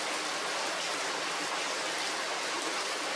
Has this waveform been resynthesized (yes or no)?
no